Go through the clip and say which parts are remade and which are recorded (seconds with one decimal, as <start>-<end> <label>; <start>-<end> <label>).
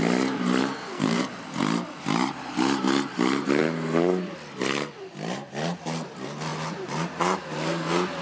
0.0-0.6 recorded; 0.6-1.2 remade; 1.2-8.2 recorded